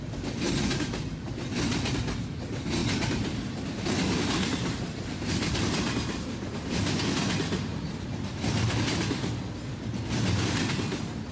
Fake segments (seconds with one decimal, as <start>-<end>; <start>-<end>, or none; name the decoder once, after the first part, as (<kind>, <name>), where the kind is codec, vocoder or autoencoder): none